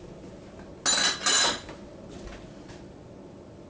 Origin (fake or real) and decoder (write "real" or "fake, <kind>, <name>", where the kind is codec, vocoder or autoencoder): real